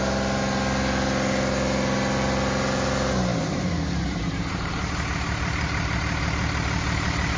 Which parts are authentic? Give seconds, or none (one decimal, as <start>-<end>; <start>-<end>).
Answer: 0.0-3.3; 4.7-7.4

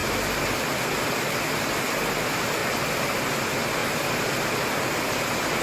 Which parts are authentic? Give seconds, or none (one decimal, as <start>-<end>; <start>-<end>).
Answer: 0.0-2.6; 3.2-3.8; 4.4-5.6

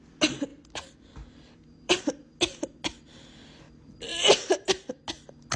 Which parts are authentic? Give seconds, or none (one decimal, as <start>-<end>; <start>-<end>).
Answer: 0.0-0.5; 2.0-4.1; 5.0-5.6

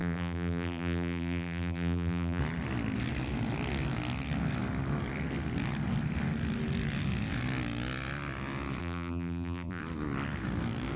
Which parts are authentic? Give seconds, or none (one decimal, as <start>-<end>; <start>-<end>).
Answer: 2.4-8.8; 9.8-11.0

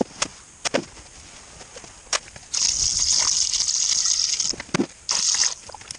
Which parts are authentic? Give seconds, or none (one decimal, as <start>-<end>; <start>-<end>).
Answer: 0.0-6.0